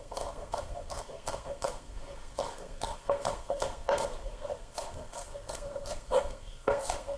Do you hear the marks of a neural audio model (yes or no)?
yes